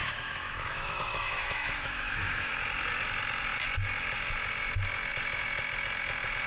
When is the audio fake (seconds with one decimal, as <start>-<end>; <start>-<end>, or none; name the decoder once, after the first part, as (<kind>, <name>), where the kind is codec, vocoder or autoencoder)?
0.0-2.5 (autoencoder, DAC-VAE)